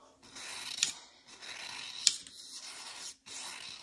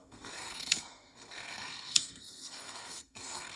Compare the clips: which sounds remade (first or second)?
second